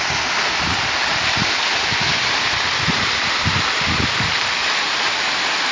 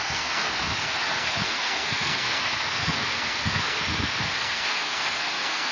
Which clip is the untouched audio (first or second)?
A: first